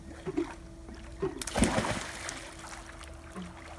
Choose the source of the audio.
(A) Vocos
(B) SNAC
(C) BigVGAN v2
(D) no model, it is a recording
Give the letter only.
D